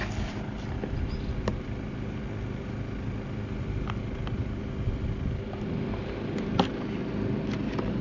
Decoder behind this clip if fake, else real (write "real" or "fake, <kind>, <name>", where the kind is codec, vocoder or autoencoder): real